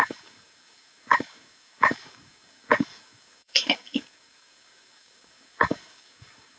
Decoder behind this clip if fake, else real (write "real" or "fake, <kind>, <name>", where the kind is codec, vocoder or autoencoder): fake, codec, DAC